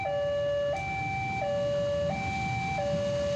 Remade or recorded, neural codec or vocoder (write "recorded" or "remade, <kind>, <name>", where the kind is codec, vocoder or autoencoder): recorded